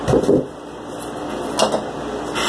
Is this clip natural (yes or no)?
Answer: yes